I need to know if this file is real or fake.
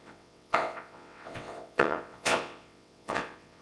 fake